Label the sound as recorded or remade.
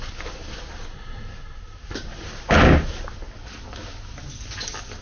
recorded